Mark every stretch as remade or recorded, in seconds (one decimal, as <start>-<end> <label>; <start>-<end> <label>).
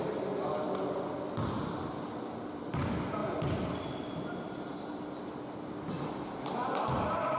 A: 0.0-7.4 recorded